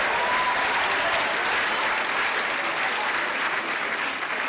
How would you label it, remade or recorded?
recorded